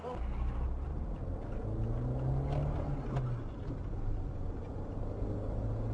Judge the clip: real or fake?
real